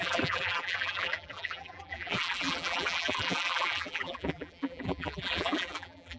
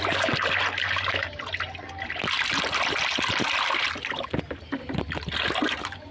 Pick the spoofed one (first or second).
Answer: first